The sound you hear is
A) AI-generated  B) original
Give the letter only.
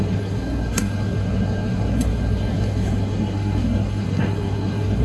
A